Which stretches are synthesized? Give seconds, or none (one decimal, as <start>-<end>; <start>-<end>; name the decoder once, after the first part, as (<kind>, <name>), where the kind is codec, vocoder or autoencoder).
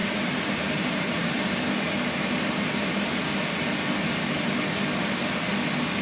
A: 0.0-3.2 (vocoder, BigVGAN v2)